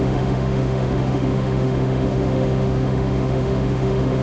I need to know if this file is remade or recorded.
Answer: remade